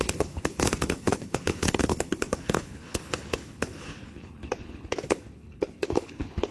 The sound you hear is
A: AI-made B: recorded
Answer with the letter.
A